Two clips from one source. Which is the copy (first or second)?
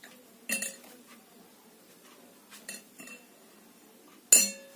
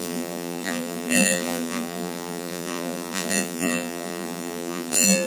second